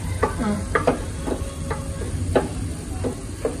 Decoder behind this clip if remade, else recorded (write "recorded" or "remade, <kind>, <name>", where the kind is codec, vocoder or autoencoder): recorded